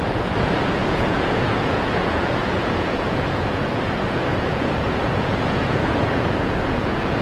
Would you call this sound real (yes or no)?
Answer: no